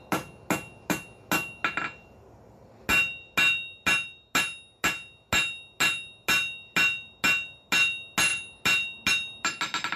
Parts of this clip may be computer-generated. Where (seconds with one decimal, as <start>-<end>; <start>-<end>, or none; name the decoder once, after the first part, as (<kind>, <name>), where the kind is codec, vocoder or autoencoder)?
none